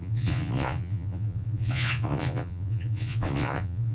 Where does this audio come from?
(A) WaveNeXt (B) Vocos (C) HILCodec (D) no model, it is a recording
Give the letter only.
B